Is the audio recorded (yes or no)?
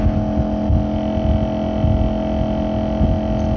yes